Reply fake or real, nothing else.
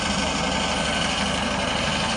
real